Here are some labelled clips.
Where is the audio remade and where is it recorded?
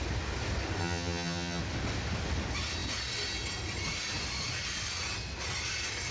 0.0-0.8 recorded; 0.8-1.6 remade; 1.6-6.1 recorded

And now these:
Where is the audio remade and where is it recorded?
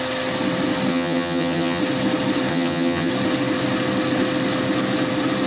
0.0-0.9 recorded; 0.9-1.8 remade; 1.8-2.5 recorded; 2.5-3.1 remade; 3.1-5.5 recorded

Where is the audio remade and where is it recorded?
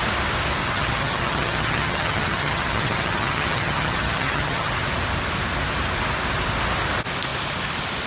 0.0-0.6 recorded; 0.6-4.7 remade; 4.7-8.1 recorded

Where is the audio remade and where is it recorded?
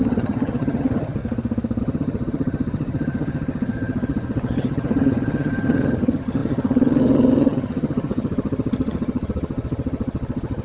0.0-1.2 remade; 1.2-1.8 recorded; 1.8-10.6 remade